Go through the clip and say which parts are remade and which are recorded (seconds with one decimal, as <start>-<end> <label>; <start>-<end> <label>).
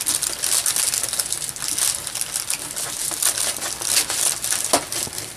0.0-5.4 recorded